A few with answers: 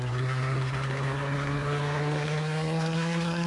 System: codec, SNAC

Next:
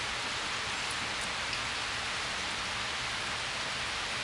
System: none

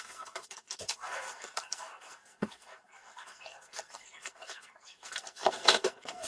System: codec, SNAC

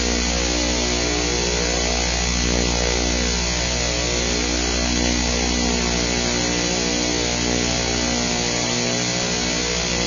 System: none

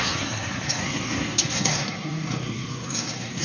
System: codec, SNAC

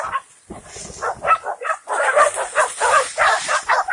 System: none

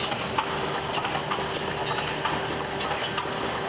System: none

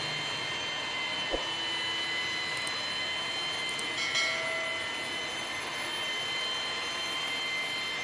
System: none